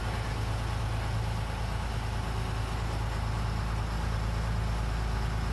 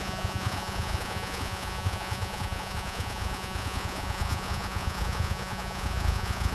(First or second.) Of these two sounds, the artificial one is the second